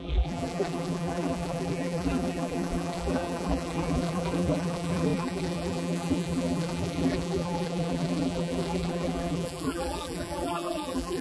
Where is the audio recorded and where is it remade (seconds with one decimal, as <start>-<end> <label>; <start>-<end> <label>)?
0.0-11.2 remade